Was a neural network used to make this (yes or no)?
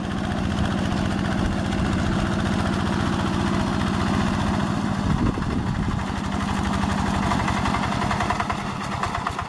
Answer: no